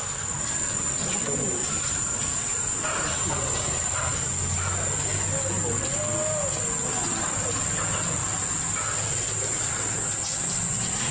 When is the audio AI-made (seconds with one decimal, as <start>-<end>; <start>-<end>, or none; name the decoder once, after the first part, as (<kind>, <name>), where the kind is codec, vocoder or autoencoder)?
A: 1.6-4.2 (vocoder, BigVGAN v2)